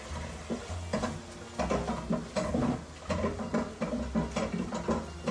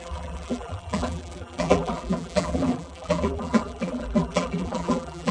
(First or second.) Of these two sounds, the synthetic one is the second